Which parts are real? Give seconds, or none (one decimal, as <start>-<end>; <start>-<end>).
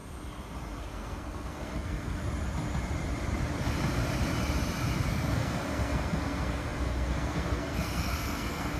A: 0.0-0.8; 2.2-5.1